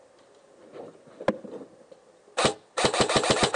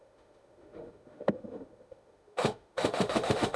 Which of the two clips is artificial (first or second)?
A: second